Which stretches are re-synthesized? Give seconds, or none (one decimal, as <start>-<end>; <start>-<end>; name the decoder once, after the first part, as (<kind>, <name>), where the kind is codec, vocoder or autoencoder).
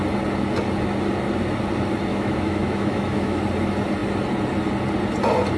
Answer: 2.1-3.4 (autoencoder, DAC-VAE)